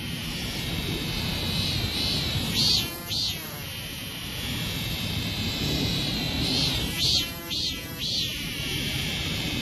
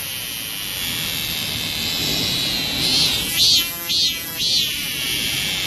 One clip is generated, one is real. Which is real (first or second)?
second